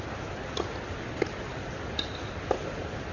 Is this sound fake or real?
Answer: real